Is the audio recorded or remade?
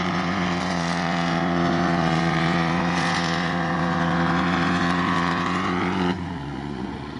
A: remade